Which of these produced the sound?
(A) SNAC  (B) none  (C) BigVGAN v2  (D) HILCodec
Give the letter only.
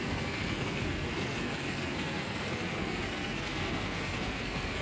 A